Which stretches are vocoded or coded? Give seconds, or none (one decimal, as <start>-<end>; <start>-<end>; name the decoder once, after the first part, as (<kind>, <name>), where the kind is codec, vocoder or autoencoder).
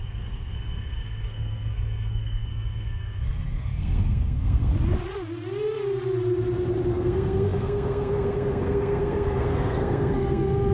0.0-4.7 (codec, SNAC); 6.9-10.7